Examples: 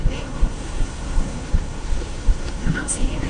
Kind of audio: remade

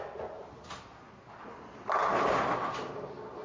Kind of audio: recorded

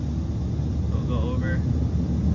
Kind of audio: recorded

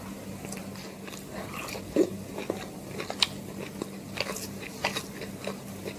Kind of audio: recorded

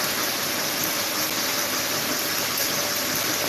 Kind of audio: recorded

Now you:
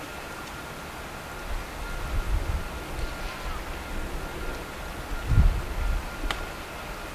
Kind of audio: recorded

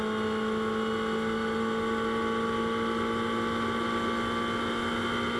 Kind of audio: recorded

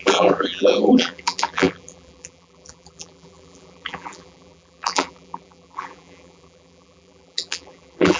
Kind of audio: remade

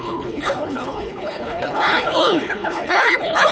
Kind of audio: remade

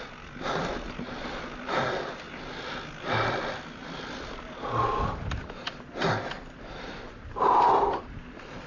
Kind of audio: recorded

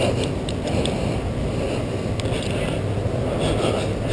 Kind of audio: recorded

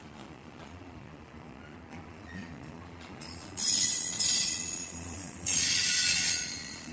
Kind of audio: remade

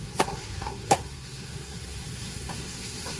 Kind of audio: remade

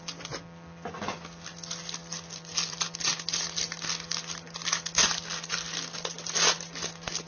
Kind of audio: recorded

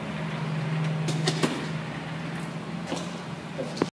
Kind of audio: recorded